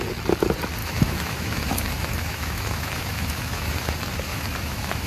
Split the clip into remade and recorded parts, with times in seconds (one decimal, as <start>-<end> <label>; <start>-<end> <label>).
0.0-0.8 recorded; 0.8-3.9 remade; 3.9-4.3 recorded; 4.3-5.1 remade